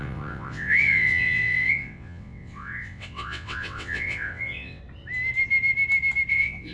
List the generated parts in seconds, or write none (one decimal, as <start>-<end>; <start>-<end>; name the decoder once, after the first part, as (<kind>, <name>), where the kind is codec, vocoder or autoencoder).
0.0-4.8 (vocoder, WaveNeXt); 6.3-6.7